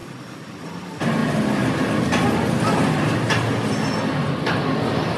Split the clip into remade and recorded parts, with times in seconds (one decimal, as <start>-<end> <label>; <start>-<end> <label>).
0.0-5.2 recorded

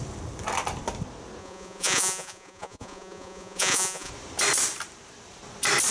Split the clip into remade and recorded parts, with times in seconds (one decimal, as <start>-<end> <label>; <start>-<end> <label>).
0.0-1.4 recorded; 1.4-4.1 remade; 4.1-5.9 recorded

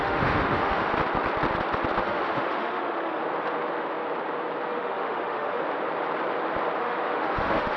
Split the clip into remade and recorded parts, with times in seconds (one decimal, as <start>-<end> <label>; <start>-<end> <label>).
0.0-0.9 remade; 0.9-2.0 recorded; 2.0-3.2 remade; 3.2-4.7 recorded; 4.7-5.6 remade; 5.6-6.8 recorded; 6.8-7.8 remade